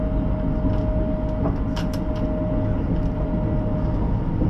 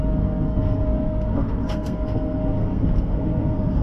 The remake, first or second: second